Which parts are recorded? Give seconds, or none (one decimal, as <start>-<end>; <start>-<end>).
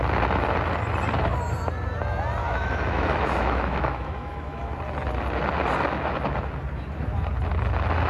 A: 0.0-2.4; 4.8-8.1